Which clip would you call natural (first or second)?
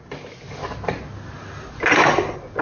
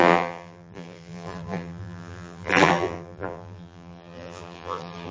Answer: first